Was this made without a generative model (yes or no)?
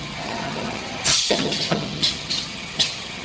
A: no